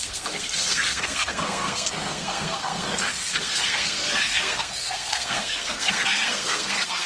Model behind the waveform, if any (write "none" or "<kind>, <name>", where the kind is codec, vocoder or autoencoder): codec, SNAC